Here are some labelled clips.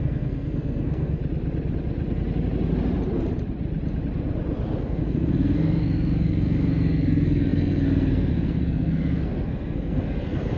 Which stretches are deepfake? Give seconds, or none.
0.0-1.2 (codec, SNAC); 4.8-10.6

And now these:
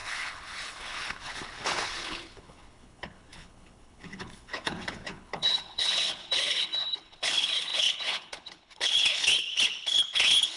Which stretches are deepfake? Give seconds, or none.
0.0-10.6 (codec, HILCodec)

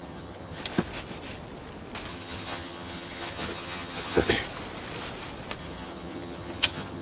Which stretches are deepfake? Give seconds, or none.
0.0-0.6 (vocoder, HiFi-GAN); 2.1-4.3; 5.6-7.0

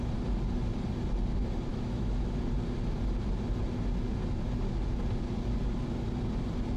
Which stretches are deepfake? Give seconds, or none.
1.7-2.4 (autoencoder, DAC-VAE)

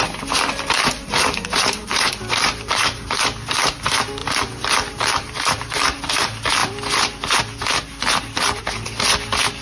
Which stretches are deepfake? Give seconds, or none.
0.8-3.7 (vocoder, BigVGAN v2); 4.2-6.0